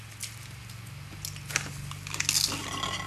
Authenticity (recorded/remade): recorded